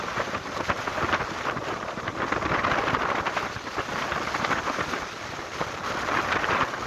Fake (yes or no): no